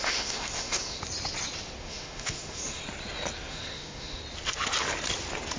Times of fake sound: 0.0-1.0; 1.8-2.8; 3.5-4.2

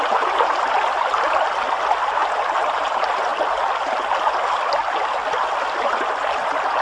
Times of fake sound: none